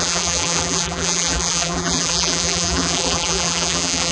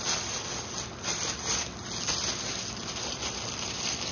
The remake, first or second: first